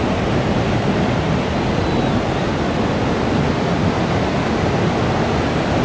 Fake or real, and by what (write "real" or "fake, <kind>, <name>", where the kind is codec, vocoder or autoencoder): real